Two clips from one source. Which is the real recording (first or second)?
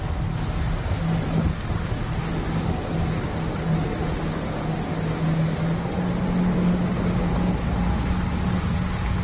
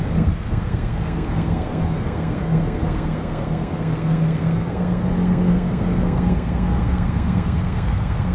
first